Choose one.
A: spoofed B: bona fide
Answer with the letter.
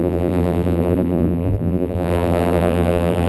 A